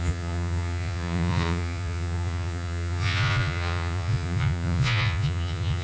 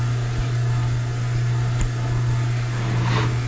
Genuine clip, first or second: second